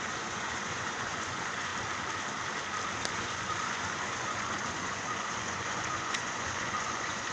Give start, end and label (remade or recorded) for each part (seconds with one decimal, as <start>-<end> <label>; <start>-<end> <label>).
0.0-1.7 remade; 1.7-3.1 recorded; 3.1-7.3 remade